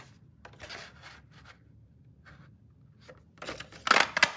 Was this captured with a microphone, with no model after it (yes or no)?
yes